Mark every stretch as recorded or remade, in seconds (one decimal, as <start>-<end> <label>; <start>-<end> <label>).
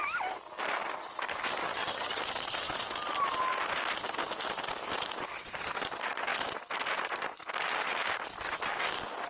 0.0-1.6 recorded; 1.6-2.2 remade; 2.2-9.3 recorded